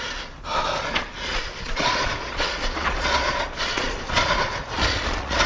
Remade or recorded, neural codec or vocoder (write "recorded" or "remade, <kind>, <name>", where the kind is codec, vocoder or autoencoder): remade, vocoder, Vocos